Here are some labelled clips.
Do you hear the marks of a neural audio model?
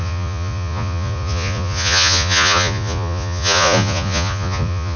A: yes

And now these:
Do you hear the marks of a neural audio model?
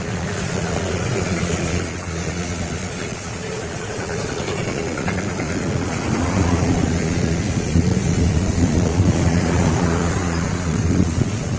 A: yes